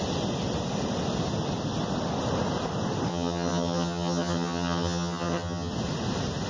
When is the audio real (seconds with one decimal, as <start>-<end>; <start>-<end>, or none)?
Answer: 0.0-3.1; 5.7-6.5